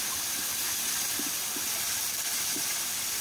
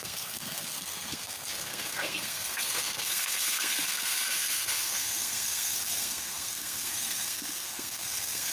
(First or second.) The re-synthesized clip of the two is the second